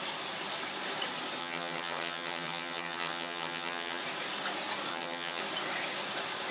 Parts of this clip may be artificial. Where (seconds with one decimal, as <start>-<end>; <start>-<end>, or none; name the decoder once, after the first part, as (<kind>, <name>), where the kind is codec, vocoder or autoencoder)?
1.4-4.0 (vocoder, HiFi-GAN); 4.9-5.4